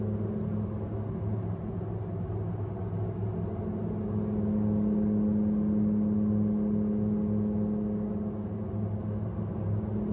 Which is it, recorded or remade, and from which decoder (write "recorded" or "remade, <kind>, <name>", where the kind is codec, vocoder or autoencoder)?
recorded